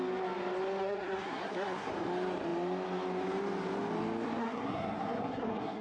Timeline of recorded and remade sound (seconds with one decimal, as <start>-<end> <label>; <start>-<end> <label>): 0.0-0.8 recorded; 0.8-1.9 remade; 1.9-4.4 recorded; 4.4-5.8 remade